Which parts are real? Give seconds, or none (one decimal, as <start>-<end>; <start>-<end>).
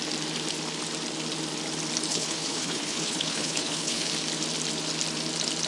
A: 0.0-2.1; 4.1-5.7